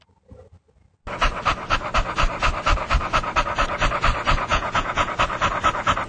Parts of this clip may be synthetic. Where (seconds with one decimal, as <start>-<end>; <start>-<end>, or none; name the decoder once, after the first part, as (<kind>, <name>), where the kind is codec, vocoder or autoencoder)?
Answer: 4.5-5.1 (vocoder, Vocos)